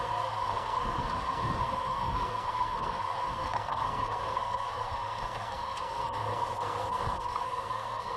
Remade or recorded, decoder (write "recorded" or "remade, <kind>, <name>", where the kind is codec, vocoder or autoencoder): remade, codec, SNAC